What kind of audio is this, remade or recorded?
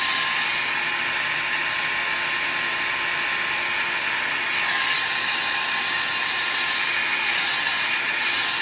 recorded